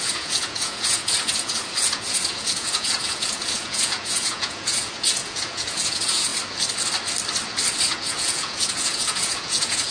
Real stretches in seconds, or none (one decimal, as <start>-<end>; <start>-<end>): 6.3-7.8